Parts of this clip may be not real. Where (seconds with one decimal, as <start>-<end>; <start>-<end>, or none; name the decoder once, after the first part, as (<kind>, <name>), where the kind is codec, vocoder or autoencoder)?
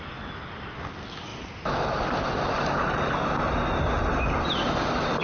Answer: none